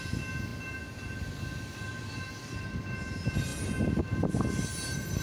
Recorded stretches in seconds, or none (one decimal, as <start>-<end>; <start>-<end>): 0.0-5.2